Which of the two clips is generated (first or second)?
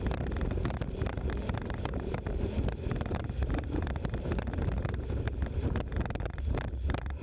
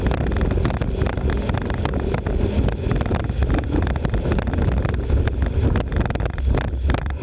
first